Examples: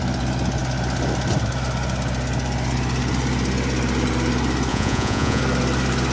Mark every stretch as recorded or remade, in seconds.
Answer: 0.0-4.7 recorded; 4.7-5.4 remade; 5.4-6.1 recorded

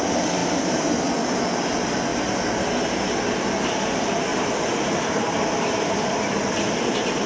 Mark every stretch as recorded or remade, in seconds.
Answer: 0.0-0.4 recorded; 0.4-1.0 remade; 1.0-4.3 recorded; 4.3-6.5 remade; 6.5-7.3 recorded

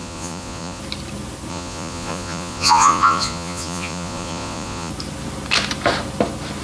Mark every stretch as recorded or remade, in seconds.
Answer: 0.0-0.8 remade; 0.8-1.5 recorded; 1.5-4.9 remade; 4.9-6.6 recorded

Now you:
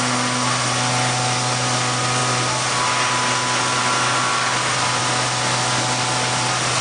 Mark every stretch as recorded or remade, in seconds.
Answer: 0.0-6.8 recorded

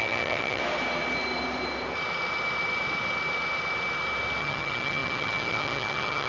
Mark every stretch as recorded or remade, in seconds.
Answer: 0.0-0.6 remade; 0.6-4.4 recorded; 4.4-6.3 remade

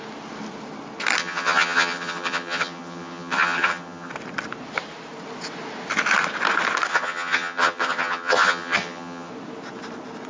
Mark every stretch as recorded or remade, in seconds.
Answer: 0.0-1.2 recorded; 1.2-4.1 remade; 4.1-6.9 recorded; 6.9-9.3 remade; 9.3-10.3 recorded